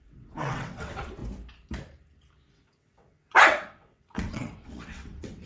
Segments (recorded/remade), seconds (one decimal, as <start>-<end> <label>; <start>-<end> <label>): 0.0-1.2 remade; 1.2-2.5 recorded; 2.5-5.5 remade